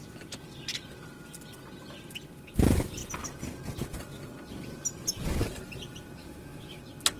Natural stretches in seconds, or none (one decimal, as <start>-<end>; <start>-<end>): 0.0-6.2; 6.8-7.2